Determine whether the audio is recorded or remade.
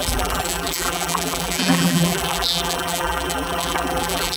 remade